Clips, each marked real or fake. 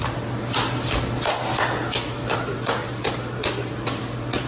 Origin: real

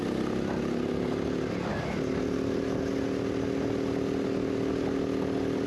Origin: real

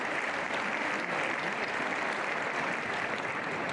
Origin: real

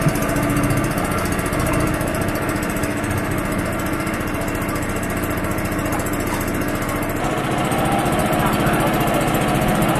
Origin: real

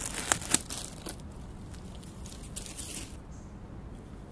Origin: real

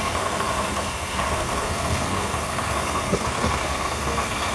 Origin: fake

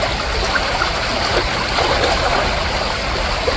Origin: real